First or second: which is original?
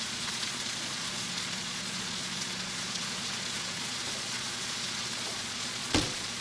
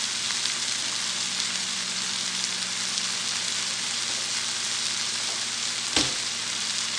second